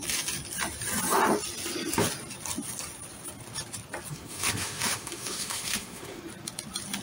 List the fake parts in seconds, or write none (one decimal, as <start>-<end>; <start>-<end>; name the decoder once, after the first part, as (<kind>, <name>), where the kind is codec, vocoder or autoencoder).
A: 4.1-6.2 (autoencoder, DAC-VAE)